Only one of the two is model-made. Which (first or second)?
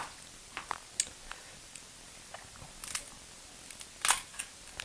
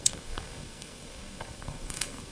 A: second